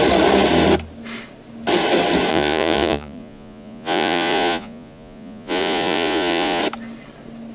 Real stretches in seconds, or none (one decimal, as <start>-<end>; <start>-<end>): 0.0-2.3; 6.6-7.5

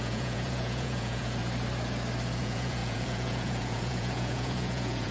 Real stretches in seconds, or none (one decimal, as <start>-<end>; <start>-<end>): 1.4-2.4

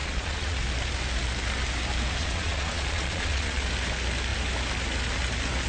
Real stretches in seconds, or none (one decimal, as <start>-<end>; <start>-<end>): 0.6-2.2; 3.7-5.7

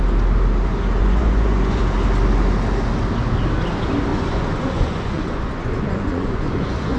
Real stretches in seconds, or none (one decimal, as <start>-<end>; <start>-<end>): 0.0-1.0; 1.8-4.1

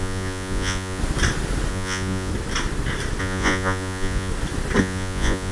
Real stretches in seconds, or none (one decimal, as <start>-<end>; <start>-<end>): 1.0-1.7; 2.3-3.2; 4.3-4.8

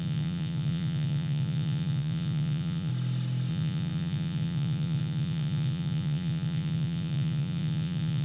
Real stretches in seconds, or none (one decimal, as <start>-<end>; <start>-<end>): 2.9-3.5

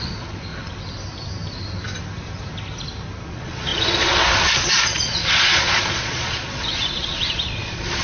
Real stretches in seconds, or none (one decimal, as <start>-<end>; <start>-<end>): 0.5-3.3

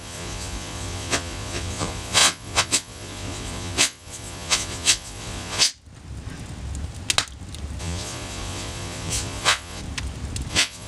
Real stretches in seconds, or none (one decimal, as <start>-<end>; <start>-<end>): 5.7-7.8; 9.8-10.5